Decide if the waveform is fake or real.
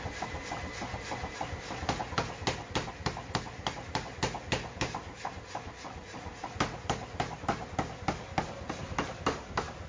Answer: real